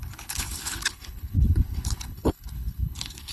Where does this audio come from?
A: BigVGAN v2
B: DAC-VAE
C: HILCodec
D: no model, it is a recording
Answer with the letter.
C